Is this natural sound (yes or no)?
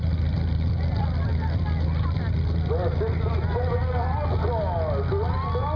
yes